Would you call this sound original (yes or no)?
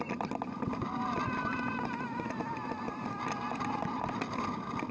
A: yes